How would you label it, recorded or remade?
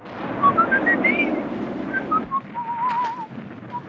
recorded